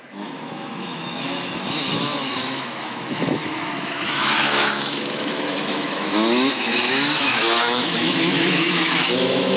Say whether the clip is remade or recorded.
remade